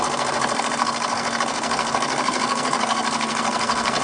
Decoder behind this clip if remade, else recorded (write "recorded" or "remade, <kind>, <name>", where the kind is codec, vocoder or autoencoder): remade, codec, SNAC